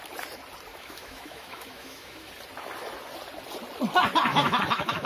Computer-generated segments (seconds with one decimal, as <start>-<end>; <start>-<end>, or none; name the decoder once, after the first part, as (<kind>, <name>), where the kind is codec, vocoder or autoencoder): 0.7-2.3 (autoencoder, DAC-VAE); 4.3-5.1